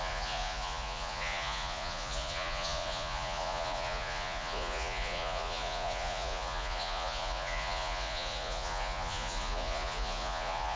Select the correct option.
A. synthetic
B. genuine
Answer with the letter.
A